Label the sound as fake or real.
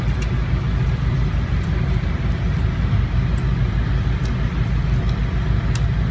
real